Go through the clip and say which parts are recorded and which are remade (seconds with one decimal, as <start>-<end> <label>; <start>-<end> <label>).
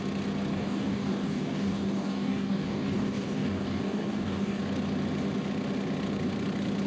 0.0-0.5 recorded; 0.5-4.6 remade; 4.6-6.9 recorded